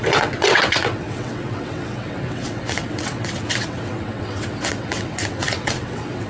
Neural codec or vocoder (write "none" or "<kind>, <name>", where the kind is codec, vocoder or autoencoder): vocoder, WaveNeXt